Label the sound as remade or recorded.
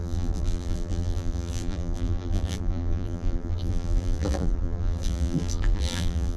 remade